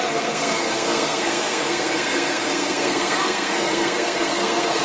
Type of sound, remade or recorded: remade